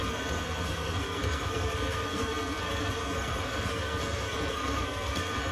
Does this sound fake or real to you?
fake